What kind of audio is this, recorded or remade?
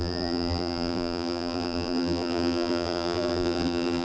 remade